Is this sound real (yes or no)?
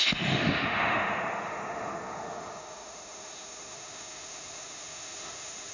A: no